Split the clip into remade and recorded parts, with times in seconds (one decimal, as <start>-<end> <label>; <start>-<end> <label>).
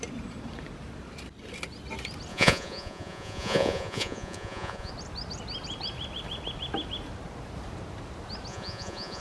0.0-2.3 recorded; 2.3-4.9 remade; 4.9-8.5 recorded; 8.5-9.2 remade